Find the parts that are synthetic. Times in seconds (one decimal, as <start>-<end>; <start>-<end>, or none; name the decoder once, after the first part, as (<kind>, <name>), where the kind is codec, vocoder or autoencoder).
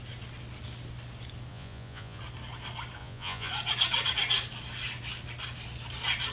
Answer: 1.5-2.2 (vocoder, Vocos); 3.0-3.5